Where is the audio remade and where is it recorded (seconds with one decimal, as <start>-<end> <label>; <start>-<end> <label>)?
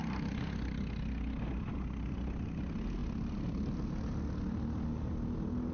0.0-5.7 recorded